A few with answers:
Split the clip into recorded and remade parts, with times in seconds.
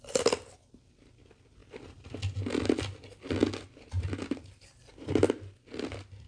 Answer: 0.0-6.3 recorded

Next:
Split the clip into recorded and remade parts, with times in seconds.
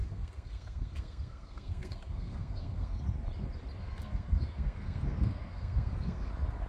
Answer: 0.0-3.0 remade; 3.0-3.8 recorded; 3.8-6.3 remade; 6.3-6.7 recorded